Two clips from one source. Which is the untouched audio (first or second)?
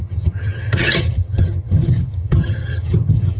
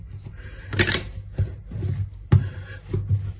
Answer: second